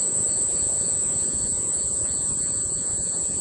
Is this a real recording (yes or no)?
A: no